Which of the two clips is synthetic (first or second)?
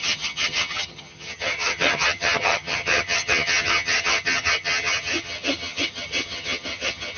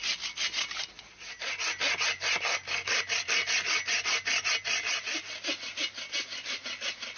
first